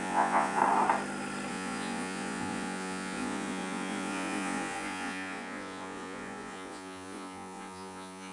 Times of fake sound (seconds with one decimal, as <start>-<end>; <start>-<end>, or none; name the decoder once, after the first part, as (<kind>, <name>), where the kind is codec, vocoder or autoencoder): 0.0-0.6 (vocoder, Vocos); 1.5-8.3